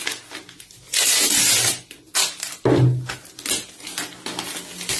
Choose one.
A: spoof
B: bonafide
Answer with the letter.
B